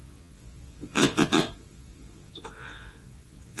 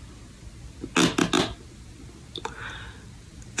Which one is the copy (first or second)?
first